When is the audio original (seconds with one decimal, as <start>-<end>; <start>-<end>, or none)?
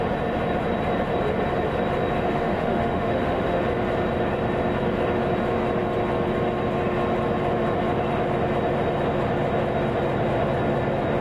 0.0-2.3; 3.6-11.2